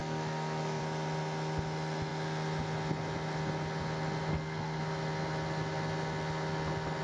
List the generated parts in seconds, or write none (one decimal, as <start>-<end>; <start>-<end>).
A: 0.0-0.8; 4.3-4.8